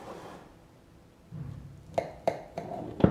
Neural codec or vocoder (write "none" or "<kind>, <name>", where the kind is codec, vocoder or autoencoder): none